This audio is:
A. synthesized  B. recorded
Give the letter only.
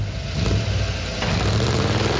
B